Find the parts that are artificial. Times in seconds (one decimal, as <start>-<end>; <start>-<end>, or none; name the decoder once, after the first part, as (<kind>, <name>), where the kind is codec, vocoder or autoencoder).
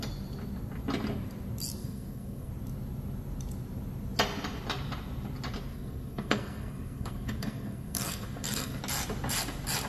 1.8-2.5 (codec, SNAC); 5.7-8.8